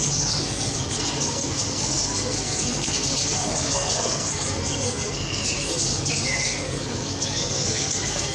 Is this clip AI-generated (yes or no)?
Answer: yes